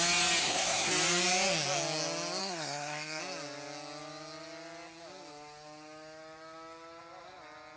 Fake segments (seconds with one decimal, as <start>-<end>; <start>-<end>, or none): 0.4-0.9; 2.4-3.2